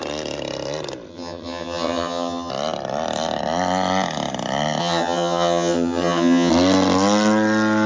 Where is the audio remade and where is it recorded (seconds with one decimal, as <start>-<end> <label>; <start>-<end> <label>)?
0.0-1.1 recorded; 1.1-2.5 remade; 2.5-4.8 recorded; 4.8-6.5 remade; 6.5-7.9 recorded

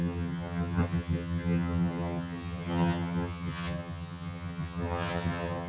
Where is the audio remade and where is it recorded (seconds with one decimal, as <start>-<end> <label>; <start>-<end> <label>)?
0.0-5.7 remade

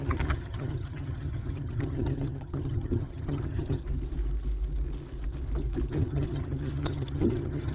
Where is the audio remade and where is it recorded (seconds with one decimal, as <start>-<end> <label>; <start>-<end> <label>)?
0.0-3.8 remade; 3.8-5.9 recorded; 5.9-7.7 remade

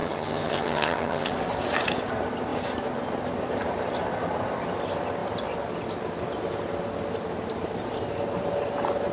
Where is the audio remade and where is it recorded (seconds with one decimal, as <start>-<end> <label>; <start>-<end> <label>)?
0.0-1.3 remade; 1.3-9.1 recorded